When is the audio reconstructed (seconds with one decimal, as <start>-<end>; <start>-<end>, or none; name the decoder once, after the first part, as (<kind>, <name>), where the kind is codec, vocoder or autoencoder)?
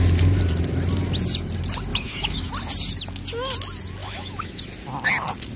1.9-2.5 (autoencoder, DAC-VAE); 4.0-4.6